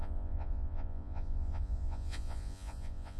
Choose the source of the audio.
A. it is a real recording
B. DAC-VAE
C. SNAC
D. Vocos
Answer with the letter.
D